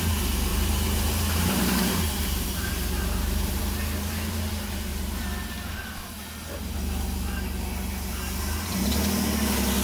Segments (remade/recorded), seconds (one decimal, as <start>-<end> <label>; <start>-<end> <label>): 0.0-0.5 recorded; 0.5-4.5 remade; 4.5-4.9 recorded; 4.9-5.5 remade; 5.5-9.8 recorded